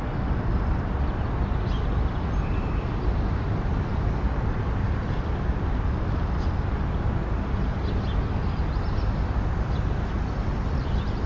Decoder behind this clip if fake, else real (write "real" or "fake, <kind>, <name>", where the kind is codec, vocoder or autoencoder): real